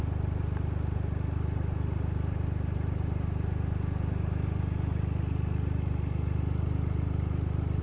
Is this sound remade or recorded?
recorded